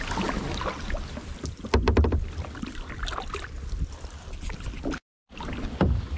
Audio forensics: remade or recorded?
recorded